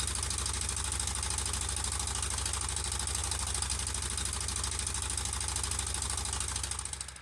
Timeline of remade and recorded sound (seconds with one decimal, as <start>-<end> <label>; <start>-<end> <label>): 0.0-7.2 recorded